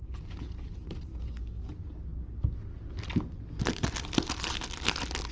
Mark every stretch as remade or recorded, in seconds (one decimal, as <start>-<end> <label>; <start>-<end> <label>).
0.0-1.1 recorded; 1.1-1.7 remade; 1.7-5.3 recorded